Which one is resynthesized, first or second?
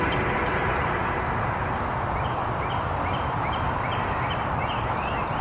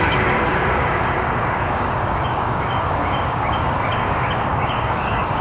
second